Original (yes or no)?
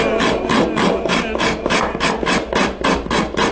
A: yes